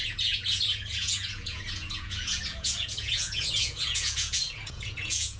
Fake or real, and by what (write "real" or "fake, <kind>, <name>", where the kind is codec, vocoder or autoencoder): fake, vocoder, Vocos